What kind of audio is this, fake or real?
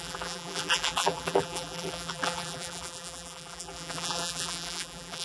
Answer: fake